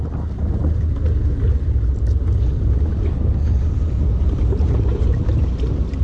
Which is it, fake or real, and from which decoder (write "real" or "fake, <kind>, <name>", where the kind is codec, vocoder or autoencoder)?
real